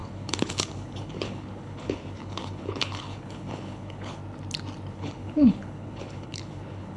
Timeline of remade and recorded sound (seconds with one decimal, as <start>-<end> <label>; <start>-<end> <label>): 0.0-4.2 remade; 4.2-4.9 recorded; 4.9-7.0 remade